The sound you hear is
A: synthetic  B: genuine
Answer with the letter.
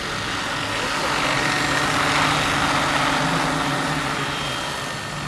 B